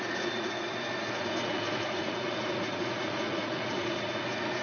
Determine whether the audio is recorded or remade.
remade